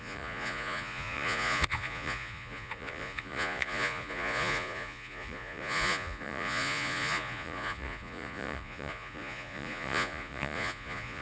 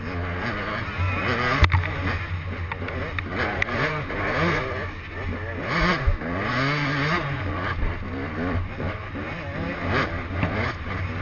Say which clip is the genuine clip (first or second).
second